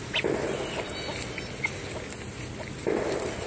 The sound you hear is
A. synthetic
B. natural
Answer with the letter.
B